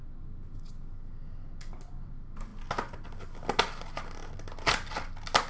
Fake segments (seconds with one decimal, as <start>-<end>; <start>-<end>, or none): none